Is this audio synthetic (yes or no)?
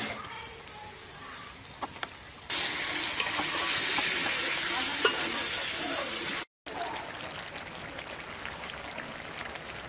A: no